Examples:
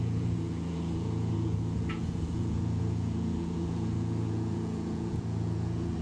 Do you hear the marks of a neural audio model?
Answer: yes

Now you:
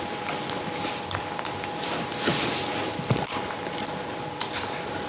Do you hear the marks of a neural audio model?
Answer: no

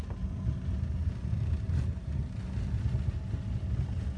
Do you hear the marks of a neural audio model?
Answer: no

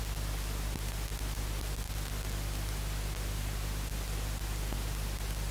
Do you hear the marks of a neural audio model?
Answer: no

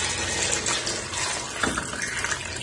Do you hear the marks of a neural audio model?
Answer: no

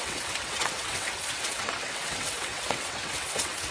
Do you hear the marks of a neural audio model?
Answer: yes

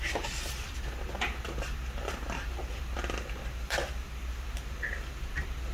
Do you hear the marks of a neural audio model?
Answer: yes